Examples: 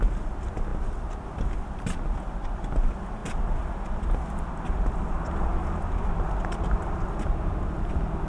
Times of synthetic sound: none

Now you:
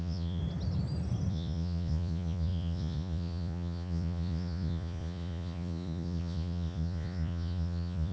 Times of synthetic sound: 0.0-0.4 (vocoder, Vocos); 1.3-8.1

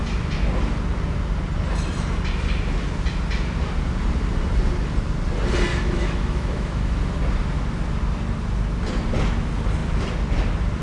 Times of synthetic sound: 5.7-7.0 (autoencoder, DAC-VAE)